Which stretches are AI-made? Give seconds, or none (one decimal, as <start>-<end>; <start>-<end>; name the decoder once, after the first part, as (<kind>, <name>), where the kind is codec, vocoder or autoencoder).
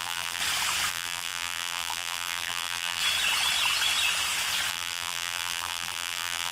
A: 0.0-0.4 (vocoder, BigVGAN v2); 0.9-3.0; 4.7-6.5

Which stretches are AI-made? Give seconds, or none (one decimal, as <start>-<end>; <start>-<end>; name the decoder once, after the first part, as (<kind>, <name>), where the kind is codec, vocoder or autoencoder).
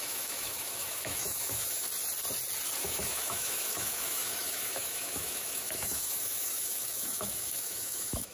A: 0.0-1.9 (autoencoder, DAC-VAE); 2.8-8.3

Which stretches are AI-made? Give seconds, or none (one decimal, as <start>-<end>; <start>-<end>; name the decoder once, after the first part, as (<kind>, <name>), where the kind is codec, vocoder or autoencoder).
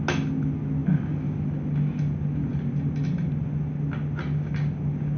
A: none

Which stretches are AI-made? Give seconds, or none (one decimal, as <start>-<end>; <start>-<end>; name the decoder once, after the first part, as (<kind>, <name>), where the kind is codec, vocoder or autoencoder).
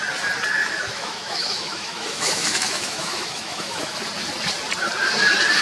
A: 0.6-4.0 (autoencoder, DAC-VAE)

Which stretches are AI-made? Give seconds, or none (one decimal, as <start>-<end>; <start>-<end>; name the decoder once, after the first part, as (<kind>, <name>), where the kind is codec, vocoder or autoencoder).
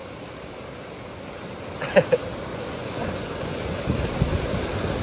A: 2.5-3.8 (vocoder, Vocos)